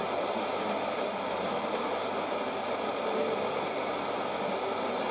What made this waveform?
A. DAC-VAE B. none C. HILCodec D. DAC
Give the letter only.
B